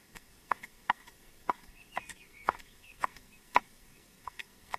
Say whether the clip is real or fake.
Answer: fake